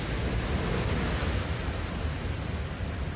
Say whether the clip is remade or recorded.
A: recorded